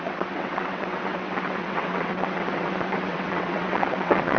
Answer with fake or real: fake